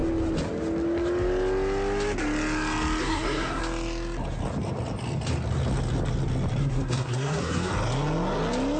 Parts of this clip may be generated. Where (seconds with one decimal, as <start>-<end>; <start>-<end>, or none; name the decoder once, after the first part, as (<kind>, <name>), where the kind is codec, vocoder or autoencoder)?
3.0-3.6 (codec, SNAC); 6.6-7.7